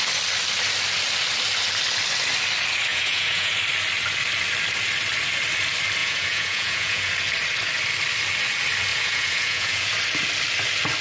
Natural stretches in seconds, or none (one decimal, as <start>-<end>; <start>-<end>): 0.0-2.9; 3.5-6.0; 7.1-8.9; 9.9-11.0

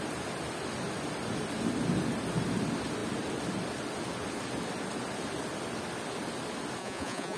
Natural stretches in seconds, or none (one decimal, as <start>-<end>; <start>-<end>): 0.0-6.8

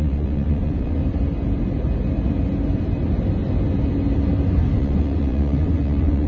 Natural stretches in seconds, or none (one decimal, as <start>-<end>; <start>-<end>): 1.0-4.8

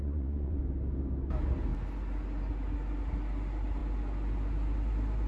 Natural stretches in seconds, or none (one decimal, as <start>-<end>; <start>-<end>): 0.6-5.3

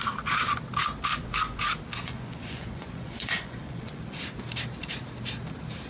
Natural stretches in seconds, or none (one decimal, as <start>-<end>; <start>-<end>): 0.0-1.1; 1.6-2.0; 4.0-5.9

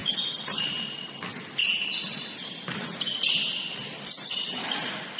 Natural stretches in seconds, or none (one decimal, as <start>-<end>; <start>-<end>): 0.0-5.2

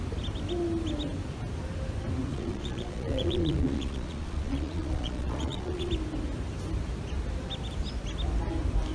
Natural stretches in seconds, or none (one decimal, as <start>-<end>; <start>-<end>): 0.0-2.3; 5.9-8.9

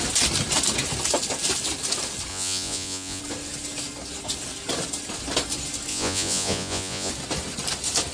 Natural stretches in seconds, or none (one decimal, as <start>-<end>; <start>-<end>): 0.0-2.3; 3.2-5.9; 7.1-8.1